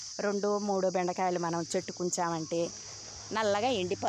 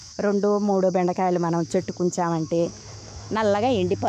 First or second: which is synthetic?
second